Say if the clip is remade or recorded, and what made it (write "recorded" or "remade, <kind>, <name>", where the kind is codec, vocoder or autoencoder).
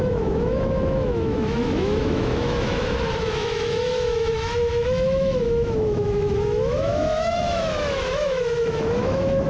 remade, autoencoder, DAC-VAE